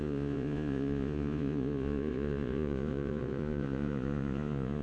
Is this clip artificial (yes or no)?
yes